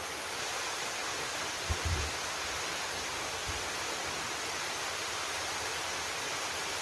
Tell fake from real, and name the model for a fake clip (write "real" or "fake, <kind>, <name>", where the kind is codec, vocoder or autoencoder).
real